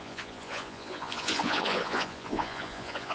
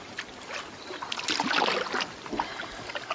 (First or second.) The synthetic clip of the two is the first